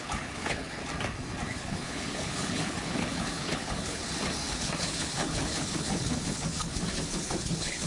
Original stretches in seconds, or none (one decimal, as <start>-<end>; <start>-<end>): 0.8-1.5; 4.0-4.5